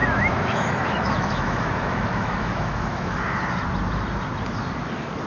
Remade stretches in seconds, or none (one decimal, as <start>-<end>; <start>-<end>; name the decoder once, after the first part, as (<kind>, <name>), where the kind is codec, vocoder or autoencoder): 0.0-3.2 (autoencoder, DAC-VAE)